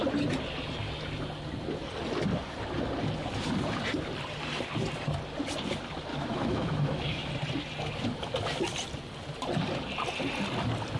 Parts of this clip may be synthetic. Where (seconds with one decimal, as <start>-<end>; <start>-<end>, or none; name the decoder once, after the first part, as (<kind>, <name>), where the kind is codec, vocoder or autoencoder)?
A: 6.1-7.3 (autoencoder, DAC-VAE)